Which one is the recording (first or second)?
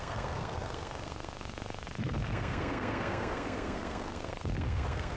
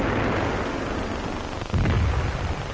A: second